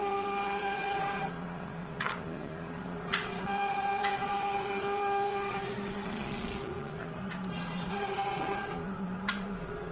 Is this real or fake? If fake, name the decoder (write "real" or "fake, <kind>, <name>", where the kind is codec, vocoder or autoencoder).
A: fake, vocoder, Vocos